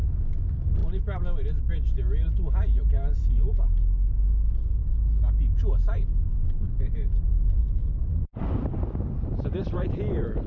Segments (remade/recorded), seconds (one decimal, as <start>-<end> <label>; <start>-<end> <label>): 0.0-2.8 recorded; 2.8-3.5 remade; 3.5-7.3 recorded; 7.3-9.9 remade; 9.9-10.5 recorded